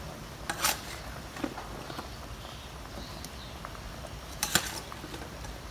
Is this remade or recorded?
recorded